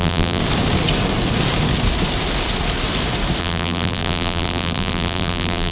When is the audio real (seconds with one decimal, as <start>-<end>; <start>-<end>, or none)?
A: 0.4-3.4